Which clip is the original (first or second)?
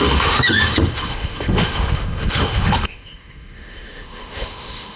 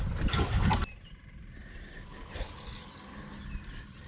second